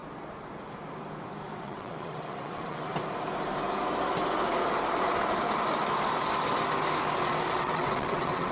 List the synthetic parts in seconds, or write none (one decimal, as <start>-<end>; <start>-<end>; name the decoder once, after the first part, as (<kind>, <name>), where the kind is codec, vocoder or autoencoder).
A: 1.6-2.9 (vocoder, WaveNeXt); 7.5-8.5